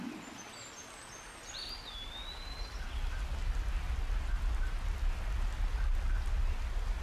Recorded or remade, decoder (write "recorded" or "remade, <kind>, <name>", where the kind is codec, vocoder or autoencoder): recorded